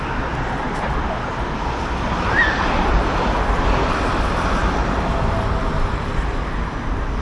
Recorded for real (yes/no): yes